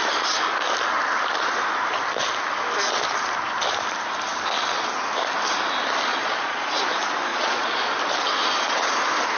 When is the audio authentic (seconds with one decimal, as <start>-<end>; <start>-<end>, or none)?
0.0-6.1; 6.7-7.3; 7.8-9.4